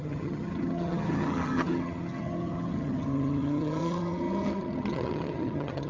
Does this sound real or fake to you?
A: fake